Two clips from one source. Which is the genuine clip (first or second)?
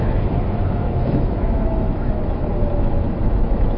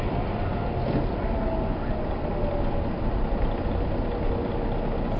second